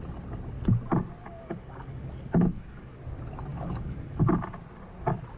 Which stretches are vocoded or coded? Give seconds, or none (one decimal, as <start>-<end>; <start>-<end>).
1.2-3.0; 3.5-4.2